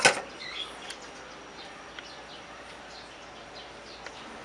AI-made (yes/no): no